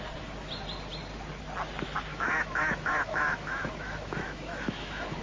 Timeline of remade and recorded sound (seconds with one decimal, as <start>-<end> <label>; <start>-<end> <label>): 0.0-2.1 recorded; 2.1-5.2 remade